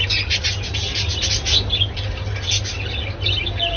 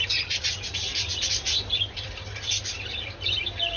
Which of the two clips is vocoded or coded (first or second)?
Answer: second